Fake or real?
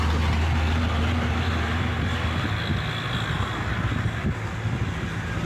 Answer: real